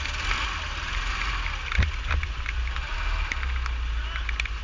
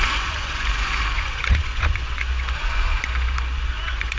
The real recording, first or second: first